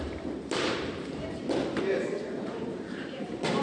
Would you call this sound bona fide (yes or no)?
no